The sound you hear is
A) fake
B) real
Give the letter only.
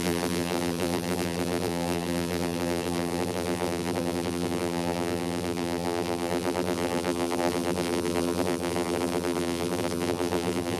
A